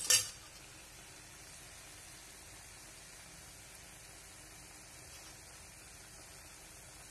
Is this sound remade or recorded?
recorded